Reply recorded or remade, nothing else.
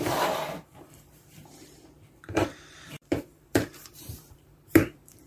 remade